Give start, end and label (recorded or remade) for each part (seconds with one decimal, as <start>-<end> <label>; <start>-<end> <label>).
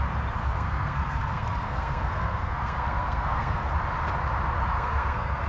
0.0-0.4 recorded; 0.4-3.7 remade; 3.7-4.7 recorded; 4.7-5.5 remade